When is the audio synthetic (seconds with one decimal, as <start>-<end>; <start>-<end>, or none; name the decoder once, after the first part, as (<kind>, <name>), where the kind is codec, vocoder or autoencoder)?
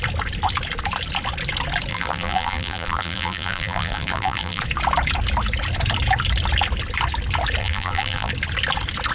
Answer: 1.9-4.6 (vocoder, BigVGAN v2); 7.6-8.3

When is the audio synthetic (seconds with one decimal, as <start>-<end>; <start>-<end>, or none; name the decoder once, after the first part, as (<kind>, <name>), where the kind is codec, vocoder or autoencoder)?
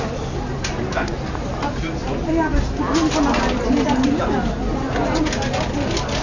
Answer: none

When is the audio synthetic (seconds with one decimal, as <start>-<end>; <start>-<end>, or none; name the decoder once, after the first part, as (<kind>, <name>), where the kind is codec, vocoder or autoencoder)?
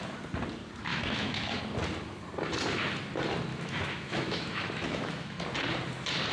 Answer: 0.9-1.6 (autoencoder, DAC-VAE); 3.5-5.4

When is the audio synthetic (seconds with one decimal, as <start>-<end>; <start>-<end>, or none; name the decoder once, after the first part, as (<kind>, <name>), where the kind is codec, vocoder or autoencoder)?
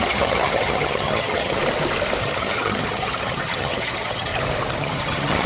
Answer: 0.0-1.6 (vocoder, HiFi-GAN); 2.2-4.3; 4.8-5.5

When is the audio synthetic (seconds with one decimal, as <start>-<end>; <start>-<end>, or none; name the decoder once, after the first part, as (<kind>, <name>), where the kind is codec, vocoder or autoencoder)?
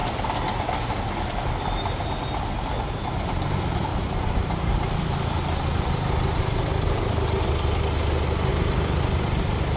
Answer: 3.9-5.0 (vocoder, BigVGAN v2); 8.5-9.0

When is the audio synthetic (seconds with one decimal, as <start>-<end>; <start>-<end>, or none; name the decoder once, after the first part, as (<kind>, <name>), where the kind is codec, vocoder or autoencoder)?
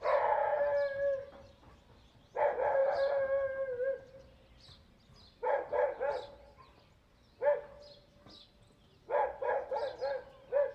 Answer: none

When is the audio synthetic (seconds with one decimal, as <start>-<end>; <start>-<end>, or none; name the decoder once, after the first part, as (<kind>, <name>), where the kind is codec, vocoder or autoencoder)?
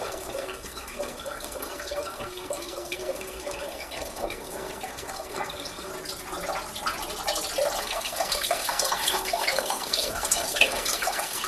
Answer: 0.0-5.9 (codec, SNAC); 7.8-11.5